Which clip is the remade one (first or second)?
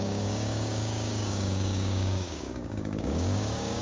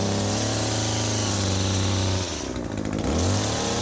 first